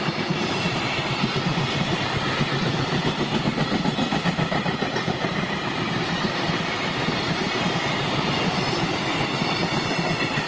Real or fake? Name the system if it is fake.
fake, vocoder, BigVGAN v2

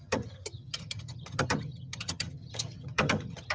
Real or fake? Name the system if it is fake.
fake, vocoder, HiFi-GAN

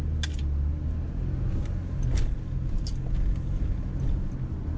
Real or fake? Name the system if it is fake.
real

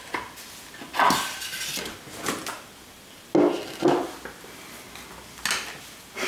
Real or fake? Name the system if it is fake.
real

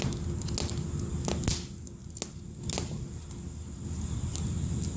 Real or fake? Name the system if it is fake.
real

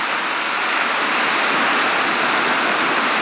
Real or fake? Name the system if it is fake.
real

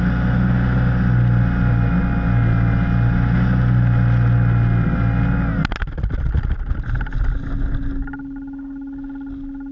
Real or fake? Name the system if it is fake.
real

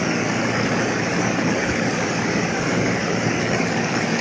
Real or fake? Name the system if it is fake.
fake, codec, DAC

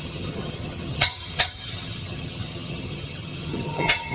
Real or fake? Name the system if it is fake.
fake, vocoder, HiFi-GAN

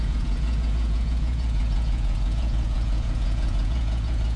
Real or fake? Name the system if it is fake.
fake, vocoder, Vocos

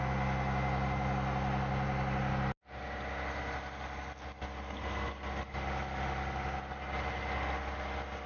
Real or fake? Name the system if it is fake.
real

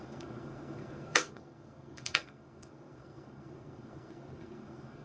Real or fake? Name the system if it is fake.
fake, codec, SNAC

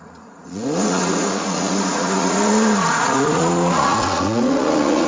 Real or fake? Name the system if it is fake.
fake, vocoder, Vocos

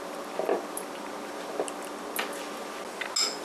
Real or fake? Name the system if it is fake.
real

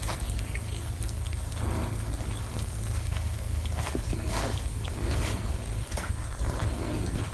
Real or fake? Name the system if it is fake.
fake, codec, SNAC